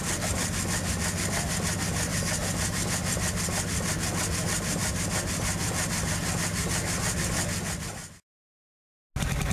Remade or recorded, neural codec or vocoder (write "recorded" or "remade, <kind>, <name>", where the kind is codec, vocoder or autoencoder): recorded